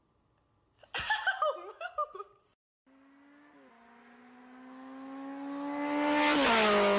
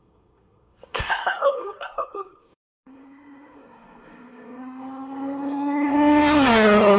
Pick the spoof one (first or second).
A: second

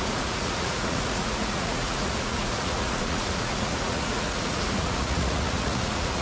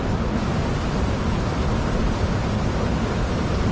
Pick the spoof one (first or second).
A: first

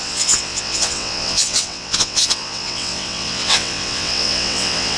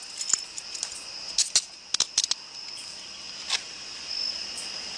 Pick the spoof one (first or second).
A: first